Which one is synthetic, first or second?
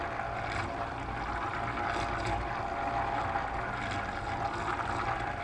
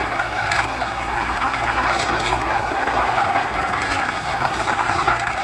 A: second